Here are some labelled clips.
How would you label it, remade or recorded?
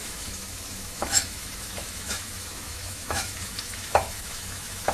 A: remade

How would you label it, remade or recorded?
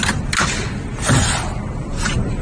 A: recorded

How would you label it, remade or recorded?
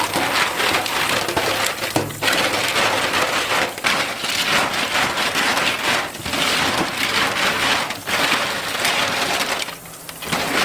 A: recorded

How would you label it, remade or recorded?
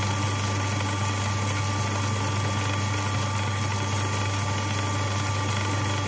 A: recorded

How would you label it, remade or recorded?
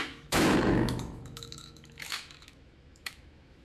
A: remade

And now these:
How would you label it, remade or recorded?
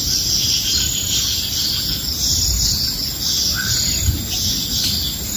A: recorded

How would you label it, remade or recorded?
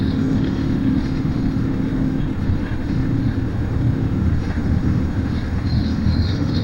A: remade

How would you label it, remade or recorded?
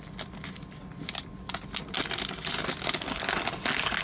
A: recorded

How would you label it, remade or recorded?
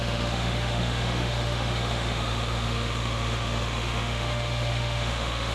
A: remade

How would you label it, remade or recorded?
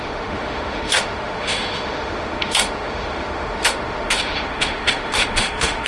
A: remade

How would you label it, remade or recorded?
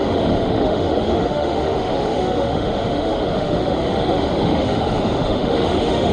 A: remade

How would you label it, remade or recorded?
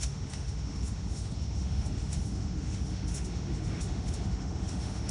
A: remade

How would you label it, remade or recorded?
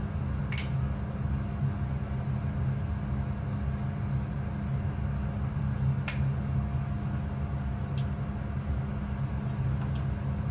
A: recorded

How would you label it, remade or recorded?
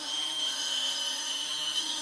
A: remade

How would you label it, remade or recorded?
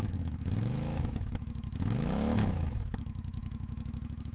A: remade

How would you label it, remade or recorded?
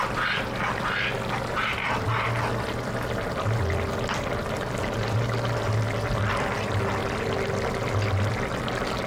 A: recorded